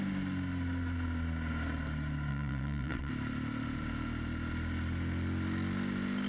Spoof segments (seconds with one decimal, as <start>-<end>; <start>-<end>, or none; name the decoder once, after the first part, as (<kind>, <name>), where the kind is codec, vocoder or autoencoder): 2.3-3.1 (vocoder, WaveNeXt)